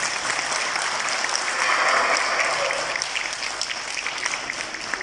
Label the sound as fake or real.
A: real